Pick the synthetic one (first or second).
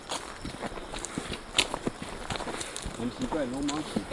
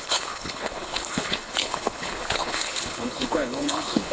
second